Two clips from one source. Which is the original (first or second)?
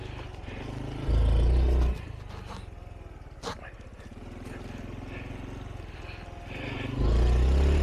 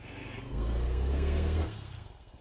first